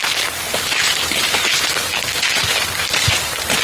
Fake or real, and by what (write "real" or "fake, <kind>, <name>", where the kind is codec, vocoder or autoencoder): fake, vocoder, BigVGAN v2